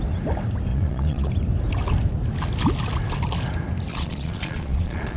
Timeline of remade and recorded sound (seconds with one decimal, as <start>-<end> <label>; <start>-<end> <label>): 0.0-0.7 recorded; 0.7-1.3 remade; 1.3-3.9 recorded; 3.9-5.2 remade